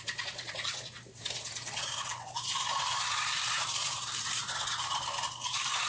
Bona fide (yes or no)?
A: yes